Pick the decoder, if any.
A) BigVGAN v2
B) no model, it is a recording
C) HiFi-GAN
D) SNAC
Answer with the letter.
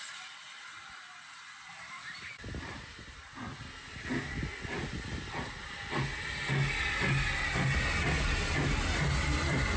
B